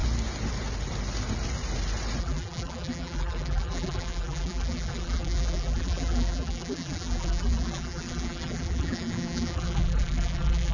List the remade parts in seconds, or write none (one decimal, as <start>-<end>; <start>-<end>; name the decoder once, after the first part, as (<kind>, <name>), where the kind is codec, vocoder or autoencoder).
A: 2.2-10.7 (vocoder, BigVGAN v2)